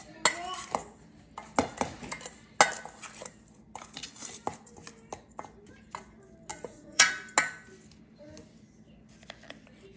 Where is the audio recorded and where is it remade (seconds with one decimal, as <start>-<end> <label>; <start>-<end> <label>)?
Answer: 0.0-6.5 recorded; 6.5-7.1 remade; 7.1-10.0 recorded